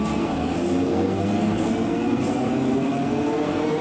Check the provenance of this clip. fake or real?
fake